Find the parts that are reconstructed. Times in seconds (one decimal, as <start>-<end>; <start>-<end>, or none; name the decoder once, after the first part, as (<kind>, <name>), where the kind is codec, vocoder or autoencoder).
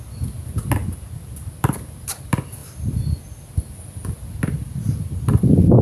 none